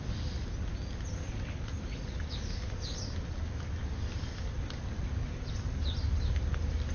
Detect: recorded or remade recorded